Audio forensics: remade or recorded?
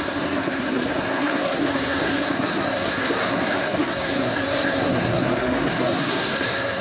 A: remade